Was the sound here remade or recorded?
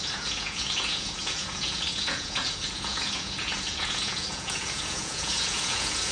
remade